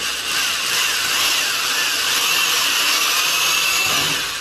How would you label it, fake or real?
real